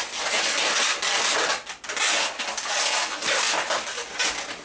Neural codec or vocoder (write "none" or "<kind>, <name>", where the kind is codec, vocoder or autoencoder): none